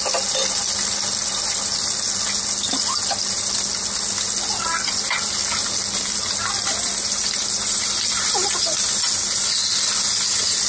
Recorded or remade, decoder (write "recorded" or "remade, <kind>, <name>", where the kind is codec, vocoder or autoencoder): recorded